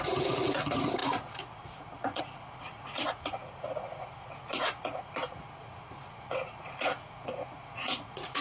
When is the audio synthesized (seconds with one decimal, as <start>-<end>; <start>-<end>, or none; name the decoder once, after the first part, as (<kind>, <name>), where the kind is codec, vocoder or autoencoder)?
0.0-8.4 (vocoder, Vocos)